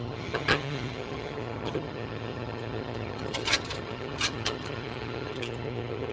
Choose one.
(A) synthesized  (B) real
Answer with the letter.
A